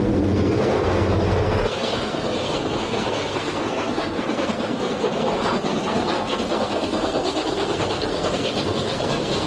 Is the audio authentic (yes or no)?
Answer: no